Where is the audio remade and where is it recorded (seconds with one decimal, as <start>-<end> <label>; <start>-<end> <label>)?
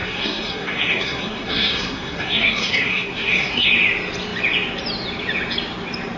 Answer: 0.0-3.7 remade; 3.7-6.2 recorded